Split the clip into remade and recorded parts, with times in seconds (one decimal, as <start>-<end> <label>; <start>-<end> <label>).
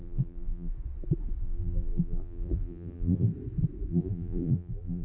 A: 0.0-0.7 remade; 0.7-1.4 recorded; 1.4-3.3 remade; 3.3-3.9 recorded; 3.9-5.0 remade